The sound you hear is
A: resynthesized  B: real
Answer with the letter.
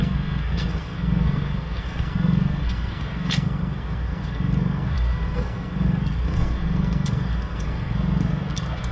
A